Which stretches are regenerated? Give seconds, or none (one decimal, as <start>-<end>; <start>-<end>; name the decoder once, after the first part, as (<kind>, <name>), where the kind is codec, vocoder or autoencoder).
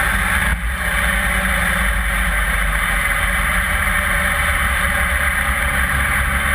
none